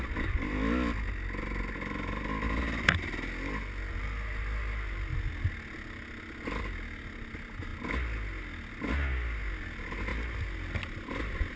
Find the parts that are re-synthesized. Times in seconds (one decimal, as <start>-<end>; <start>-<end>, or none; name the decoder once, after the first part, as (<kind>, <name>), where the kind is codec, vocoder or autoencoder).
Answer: none